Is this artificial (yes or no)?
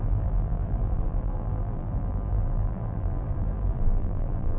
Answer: yes